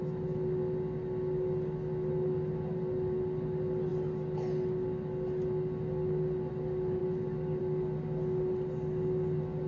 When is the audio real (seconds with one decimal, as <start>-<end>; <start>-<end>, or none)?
0.0-9.7